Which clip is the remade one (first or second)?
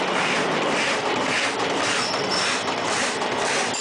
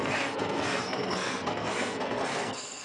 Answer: second